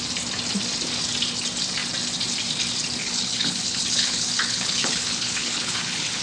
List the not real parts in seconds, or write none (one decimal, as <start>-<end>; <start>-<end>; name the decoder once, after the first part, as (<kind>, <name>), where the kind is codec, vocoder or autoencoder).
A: 3.0-6.2 (codec, HILCodec)